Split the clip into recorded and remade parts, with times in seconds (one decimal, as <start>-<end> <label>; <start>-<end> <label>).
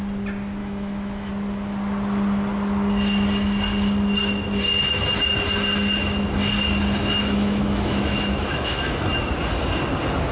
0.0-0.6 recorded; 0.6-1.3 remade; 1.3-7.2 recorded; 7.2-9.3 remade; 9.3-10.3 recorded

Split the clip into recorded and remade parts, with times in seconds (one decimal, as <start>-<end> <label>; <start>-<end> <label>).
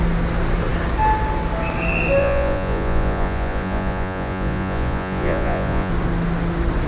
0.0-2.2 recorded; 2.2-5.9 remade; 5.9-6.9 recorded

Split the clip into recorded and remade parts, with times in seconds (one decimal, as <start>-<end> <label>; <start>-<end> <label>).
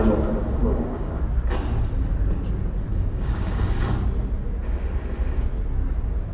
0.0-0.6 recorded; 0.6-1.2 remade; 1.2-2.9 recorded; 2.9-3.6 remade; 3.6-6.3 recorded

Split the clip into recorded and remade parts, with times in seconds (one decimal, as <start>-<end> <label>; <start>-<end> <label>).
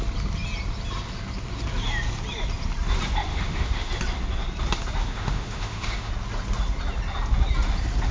0.0-3.3 recorded; 3.3-3.9 remade; 3.9-5.0 recorded; 5.0-6.1 remade; 6.1-8.1 recorded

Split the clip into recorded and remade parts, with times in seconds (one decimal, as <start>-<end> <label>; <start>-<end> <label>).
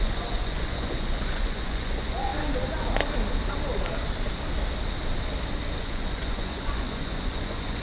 0.0-2.3 remade; 2.3-5.8 recorded; 5.8-7.8 remade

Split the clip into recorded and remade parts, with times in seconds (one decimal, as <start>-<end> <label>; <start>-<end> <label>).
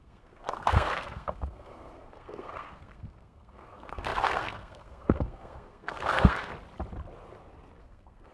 0.0-6.5 remade; 6.5-7.8 recorded; 7.8-8.3 remade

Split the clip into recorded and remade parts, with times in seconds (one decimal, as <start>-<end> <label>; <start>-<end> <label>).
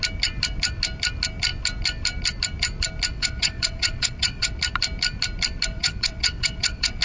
0.0-3.1 recorded; 3.1-4.6 remade; 4.6-5.7 recorded; 5.7-7.0 remade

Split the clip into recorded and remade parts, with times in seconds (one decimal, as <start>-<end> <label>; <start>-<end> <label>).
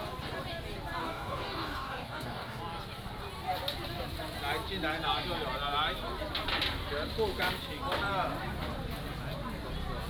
0.0-1.0 recorded; 1.0-2.6 remade; 2.6-10.1 recorded